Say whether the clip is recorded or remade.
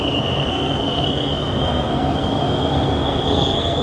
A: remade